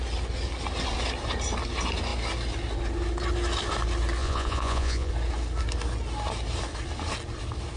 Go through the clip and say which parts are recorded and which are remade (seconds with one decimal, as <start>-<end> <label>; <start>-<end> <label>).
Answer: 0.0-4.2 recorded; 4.2-5.1 remade; 5.1-7.8 recorded